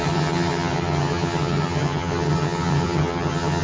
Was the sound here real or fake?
fake